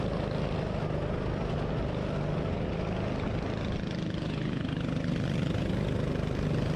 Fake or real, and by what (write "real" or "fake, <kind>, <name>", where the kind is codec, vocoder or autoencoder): real